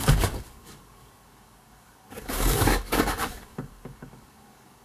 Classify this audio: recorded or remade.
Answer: remade